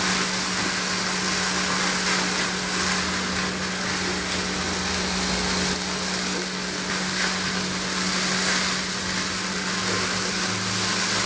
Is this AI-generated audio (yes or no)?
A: no